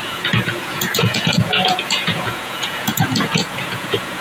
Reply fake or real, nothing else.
fake